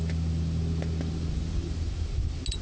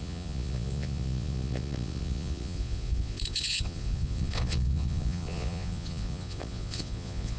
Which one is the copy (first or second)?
second